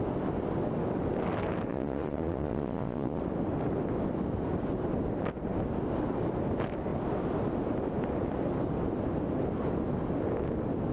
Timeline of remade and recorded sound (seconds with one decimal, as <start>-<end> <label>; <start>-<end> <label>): 0.0-1.7 recorded; 1.7-3.2 remade; 3.2-10.9 recorded